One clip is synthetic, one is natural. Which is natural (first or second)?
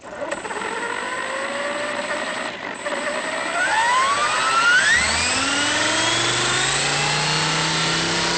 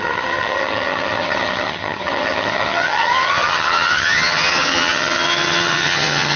first